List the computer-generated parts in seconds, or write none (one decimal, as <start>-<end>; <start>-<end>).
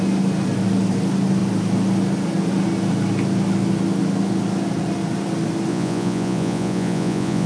5.7-7.5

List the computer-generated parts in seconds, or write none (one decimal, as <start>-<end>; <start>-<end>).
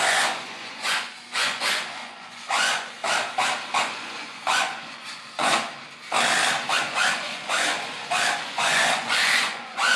0.0-3.0; 3.8-5.7; 6.8-10.0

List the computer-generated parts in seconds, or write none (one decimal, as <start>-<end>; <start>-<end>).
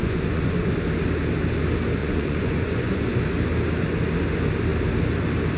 0.0-0.7; 2.0-3.2